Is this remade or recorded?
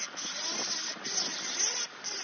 recorded